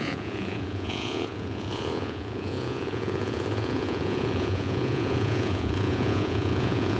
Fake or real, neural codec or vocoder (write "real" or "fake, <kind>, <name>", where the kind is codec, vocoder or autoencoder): fake, vocoder, Vocos